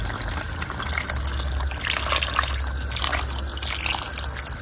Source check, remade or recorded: recorded